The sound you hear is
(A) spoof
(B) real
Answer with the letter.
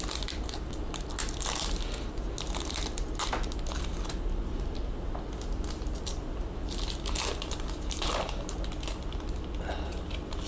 B